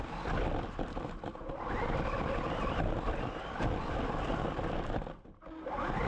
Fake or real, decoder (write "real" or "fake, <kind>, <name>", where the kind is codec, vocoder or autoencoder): real